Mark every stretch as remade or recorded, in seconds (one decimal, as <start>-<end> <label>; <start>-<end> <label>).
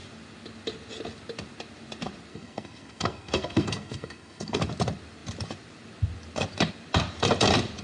0.0-2.3 recorded; 2.3-4.6 remade; 4.6-7.8 recorded